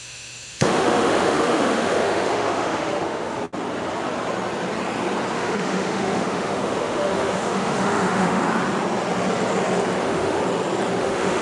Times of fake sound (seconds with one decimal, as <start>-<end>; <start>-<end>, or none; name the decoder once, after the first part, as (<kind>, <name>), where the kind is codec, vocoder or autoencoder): 0.0-3.4 (autoencoder, DAC-VAE); 5.3-8.4; 10.0-10.4; 11.0-11.4